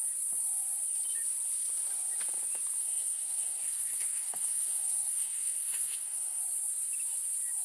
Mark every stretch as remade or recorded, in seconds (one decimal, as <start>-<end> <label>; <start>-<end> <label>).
0.0-2.8 recorded; 2.8-6.4 remade; 6.4-7.6 recorded